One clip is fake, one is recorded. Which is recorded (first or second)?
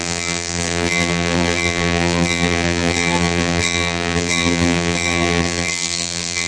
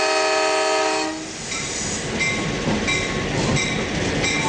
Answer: second